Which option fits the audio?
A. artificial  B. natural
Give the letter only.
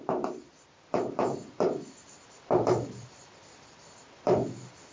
A